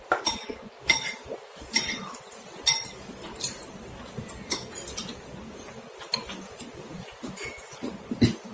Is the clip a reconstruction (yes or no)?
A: no